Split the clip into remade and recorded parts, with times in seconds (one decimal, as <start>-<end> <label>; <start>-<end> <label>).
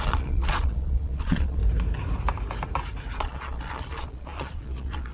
0.0-1.6 remade; 1.6-3.2 recorded; 3.2-5.1 remade